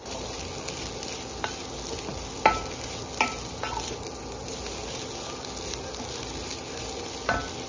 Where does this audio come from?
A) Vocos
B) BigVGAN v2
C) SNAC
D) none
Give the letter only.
D